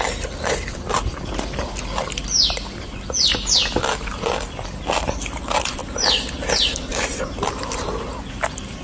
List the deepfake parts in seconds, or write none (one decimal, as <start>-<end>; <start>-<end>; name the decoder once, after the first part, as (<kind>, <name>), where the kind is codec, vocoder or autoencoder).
6.9-8.2 (vocoder, BigVGAN v2)